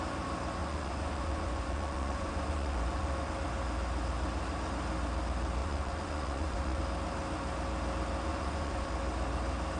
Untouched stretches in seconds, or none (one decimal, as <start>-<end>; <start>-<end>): 0.0-0.6; 3.3-5.6; 6.8-8.3; 8.9-9.8